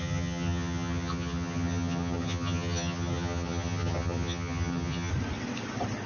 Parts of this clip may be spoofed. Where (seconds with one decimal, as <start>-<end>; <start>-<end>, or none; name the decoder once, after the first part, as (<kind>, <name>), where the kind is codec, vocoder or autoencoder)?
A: 0.0-5.1 (vocoder, HiFi-GAN)